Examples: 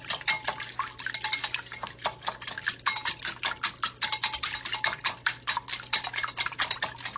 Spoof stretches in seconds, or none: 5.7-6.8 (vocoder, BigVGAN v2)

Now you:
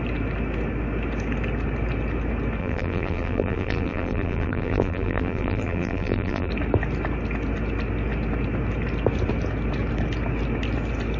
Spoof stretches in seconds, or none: 2.6-6.5 (vocoder, BigVGAN v2)